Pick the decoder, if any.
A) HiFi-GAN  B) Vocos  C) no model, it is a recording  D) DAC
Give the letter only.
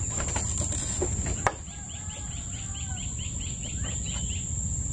C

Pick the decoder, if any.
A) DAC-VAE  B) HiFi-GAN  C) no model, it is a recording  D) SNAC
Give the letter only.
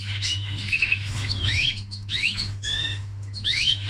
A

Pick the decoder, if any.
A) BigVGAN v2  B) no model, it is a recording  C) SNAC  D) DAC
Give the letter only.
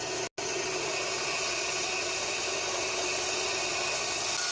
B